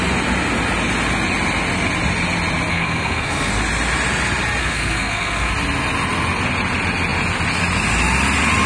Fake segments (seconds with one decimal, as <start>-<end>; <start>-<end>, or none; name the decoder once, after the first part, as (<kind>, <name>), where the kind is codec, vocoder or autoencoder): 2.7-3.5 (codec, SNAC); 4.6-5.5